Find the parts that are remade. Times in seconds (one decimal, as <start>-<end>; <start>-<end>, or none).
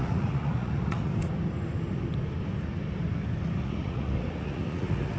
0.0-1.1; 3.6-5.2